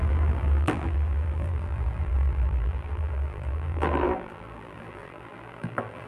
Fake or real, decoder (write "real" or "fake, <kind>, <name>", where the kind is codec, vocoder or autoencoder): fake, vocoder, BigVGAN v2